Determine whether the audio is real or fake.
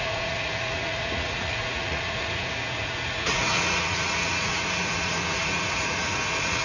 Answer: fake